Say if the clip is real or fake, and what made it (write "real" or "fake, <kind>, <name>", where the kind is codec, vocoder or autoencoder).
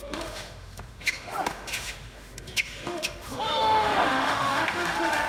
fake, autoencoder, DAC-VAE